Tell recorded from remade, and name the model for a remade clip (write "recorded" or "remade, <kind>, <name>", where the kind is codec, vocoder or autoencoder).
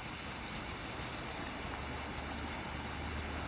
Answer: recorded